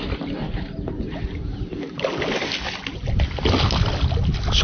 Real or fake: real